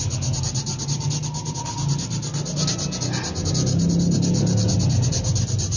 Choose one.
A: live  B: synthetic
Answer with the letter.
A